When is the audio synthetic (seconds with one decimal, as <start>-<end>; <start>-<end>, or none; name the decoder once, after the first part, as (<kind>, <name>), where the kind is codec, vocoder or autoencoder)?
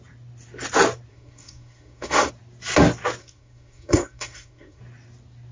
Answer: 1.1-2.3 (codec, SNAC); 3.2-4.8